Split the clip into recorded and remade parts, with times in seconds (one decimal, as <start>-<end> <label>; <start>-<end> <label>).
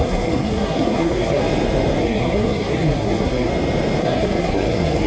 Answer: 0.0-1.4 remade; 1.4-2.0 recorded; 2.0-3.5 remade; 3.5-4.0 recorded; 4.0-5.1 remade